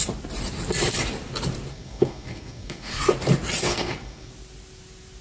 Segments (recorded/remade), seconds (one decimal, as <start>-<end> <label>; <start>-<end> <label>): 0.0-1.7 recorded; 1.7-3.0 remade; 3.0-3.7 recorded; 3.7-4.3 remade; 4.3-5.2 recorded